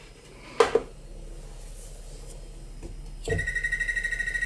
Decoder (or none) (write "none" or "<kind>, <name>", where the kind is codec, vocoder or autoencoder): none